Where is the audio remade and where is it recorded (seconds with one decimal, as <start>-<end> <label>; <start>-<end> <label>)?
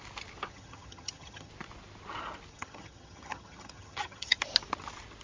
0.0-0.5 recorded; 0.5-1.5 remade; 1.5-2.5 recorded; 2.5-4.4 remade; 4.4-5.2 recorded